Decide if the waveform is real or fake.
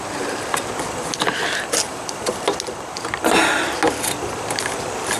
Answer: real